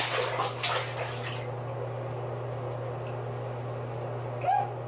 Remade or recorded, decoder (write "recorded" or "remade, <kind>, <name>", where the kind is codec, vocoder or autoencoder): recorded